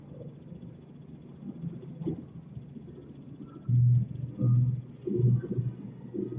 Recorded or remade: recorded